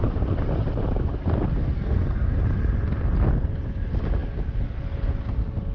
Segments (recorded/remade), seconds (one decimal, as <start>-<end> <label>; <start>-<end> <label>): 0.0-1.6 recorded; 1.6-2.4 remade; 2.4-5.7 recorded